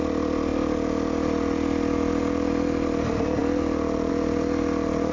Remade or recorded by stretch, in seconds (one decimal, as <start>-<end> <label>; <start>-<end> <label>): 0.0-5.1 recorded